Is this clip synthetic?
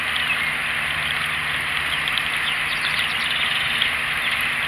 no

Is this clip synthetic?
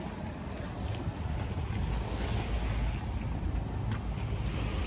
no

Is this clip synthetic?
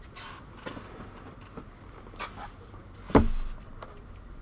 no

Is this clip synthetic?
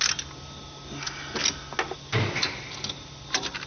no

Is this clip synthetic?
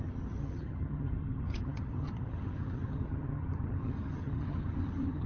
yes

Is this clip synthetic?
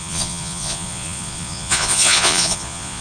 yes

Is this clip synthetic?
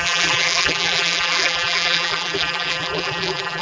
yes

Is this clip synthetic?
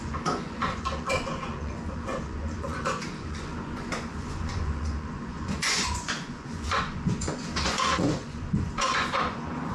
yes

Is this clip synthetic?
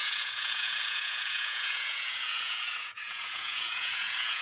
yes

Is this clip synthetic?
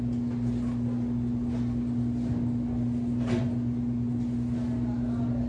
no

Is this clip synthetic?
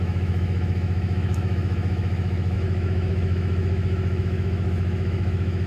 yes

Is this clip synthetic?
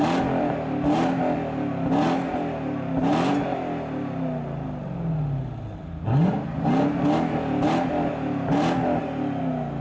no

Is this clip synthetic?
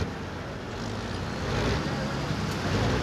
no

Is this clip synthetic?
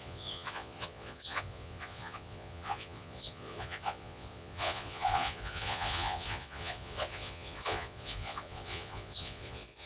yes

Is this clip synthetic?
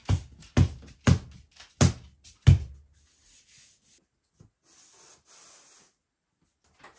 no